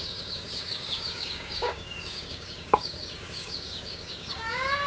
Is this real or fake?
fake